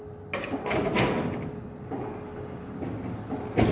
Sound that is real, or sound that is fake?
real